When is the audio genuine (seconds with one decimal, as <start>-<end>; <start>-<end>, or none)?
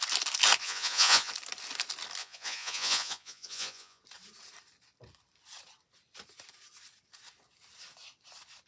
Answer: 0.0-0.6; 1.3-2.2; 4.0-8.7